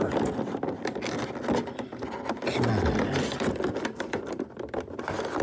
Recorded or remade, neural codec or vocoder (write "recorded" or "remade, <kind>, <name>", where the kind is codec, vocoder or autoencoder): recorded